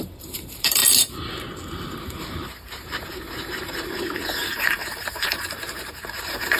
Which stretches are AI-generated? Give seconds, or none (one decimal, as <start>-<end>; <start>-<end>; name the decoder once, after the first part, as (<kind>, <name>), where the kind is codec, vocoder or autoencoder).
0.0-0.8 (vocoder, BigVGAN v2); 1.9-6.6